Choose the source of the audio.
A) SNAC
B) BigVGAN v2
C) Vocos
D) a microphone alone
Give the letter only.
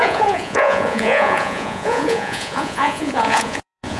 C